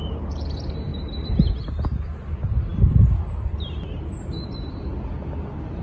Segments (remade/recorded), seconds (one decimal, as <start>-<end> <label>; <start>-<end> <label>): 0.0-5.8 recorded